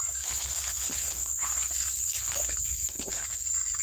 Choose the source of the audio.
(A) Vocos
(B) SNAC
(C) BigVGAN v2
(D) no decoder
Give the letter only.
B